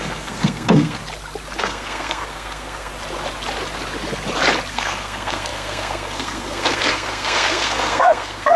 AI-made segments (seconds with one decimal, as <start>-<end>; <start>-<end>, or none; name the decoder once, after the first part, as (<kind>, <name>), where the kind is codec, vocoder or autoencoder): 0.0-1.0 (codec, SNAC); 1.6-2.9; 4.7-8.6